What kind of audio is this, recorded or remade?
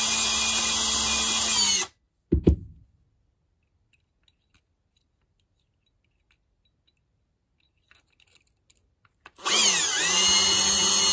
recorded